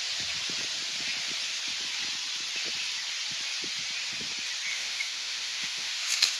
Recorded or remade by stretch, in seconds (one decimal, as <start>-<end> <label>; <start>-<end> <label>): 0.0-4.7 recorded; 4.7-6.4 remade